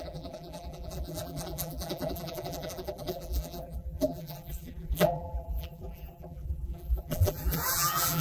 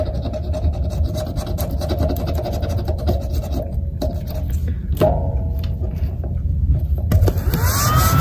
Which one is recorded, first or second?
second